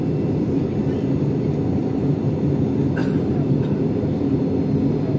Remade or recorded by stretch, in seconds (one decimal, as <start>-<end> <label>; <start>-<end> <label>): 0.0-1.8 recorded; 1.8-2.6 remade; 2.6-3.0 recorded; 3.0-4.4 remade; 4.4-5.2 recorded